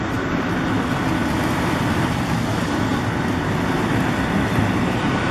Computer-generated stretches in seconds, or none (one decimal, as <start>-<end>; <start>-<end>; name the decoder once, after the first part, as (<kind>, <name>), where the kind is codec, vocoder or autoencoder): 2.9-3.9 (vocoder, BigVGAN v2); 4.5-5.3